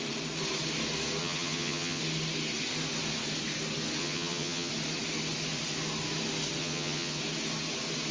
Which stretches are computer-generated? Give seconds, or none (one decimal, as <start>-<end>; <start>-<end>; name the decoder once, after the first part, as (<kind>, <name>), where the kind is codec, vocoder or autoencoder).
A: 1.2-2.0 (vocoder, HiFi-GAN); 4.0-4.7; 6.6-7.2